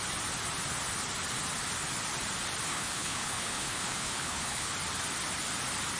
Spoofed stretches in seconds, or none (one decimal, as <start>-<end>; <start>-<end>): 2.7-4.7